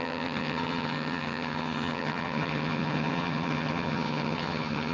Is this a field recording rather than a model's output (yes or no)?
no